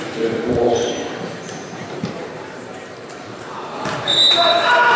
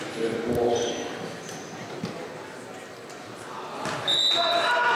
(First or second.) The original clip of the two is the second